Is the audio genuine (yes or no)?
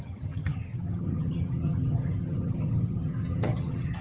no